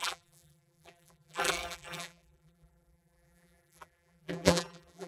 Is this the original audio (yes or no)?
no